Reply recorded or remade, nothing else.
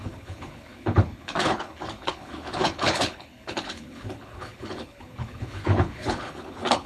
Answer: remade